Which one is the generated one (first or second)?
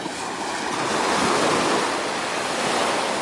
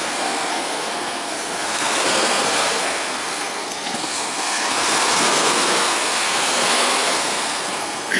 second